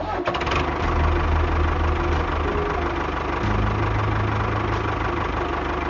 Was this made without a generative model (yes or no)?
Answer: yes